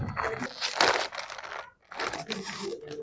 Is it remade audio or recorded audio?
recorded